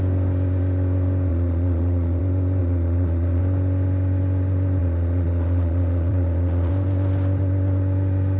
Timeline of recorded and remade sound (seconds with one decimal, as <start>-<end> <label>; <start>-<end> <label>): 0.0-1.3 recorded; 1.3-2.2 remade; 2.2-2.6 recorded; 2.6-3.4 remade; 3.4-4.8 recorded; 4.8-6.7 remade; 6.7-8.4 recorded